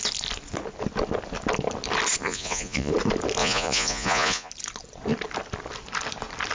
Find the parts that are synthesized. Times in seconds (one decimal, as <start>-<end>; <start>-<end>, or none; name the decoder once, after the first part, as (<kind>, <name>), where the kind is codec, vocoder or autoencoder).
2.2-2.9 (vocoder, Vocos); 3.4-4.5